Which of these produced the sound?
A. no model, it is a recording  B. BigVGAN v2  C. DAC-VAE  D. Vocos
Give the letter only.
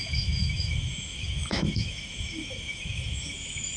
C